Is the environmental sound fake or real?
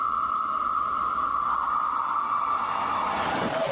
real